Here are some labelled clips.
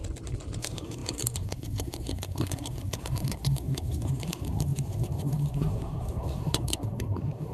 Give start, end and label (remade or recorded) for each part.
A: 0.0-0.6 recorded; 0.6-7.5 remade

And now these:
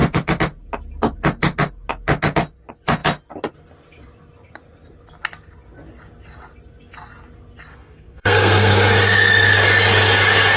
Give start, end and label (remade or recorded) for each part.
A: 0.0-7.7 recorded; 7.7-8.7 remade; 8.7-10.6 recorded

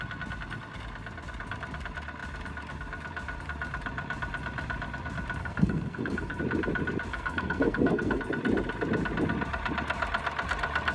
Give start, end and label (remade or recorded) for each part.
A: 0.0-5.4 recorded; 5.4-6.4 remade; 6.4-7.1 recorded; 7.1-8.2 remade; 8.2-10.9 recorded